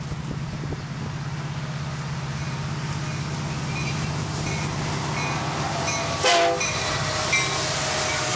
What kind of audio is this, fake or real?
real